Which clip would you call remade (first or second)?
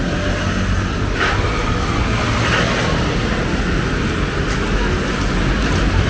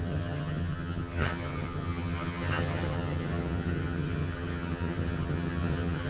second